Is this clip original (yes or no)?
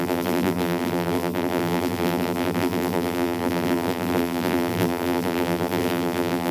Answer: no